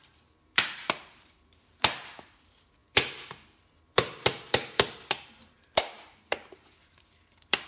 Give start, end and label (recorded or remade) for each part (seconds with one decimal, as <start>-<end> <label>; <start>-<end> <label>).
0.0-7.7 remade